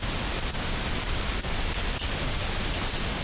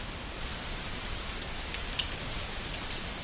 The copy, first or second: second